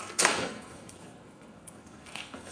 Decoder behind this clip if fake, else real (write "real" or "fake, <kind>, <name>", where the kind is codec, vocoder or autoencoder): fake, codec, SNAC